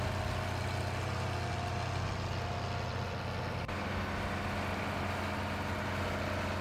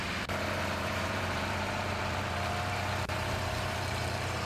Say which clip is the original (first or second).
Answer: first